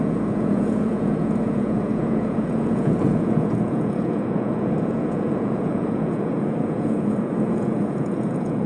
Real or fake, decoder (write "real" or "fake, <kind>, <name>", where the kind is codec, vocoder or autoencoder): fake, vocoder, Vocos